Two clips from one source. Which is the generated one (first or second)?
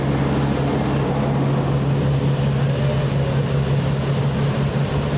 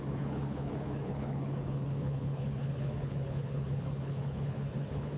second